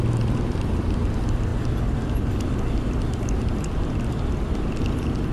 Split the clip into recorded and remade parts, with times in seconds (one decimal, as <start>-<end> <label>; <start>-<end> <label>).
0.0-5.3 recorded